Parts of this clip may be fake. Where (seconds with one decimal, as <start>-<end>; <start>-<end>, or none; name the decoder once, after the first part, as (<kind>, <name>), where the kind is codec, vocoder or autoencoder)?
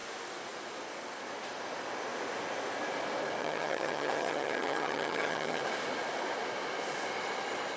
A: 3.4-5.6 (vocoder, HiFi-GAN)